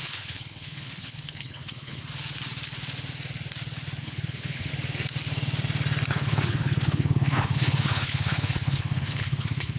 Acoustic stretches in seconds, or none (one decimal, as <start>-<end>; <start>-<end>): 2.0-4.0; 4.7-6.1